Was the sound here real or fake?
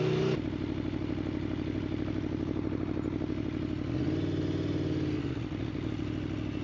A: real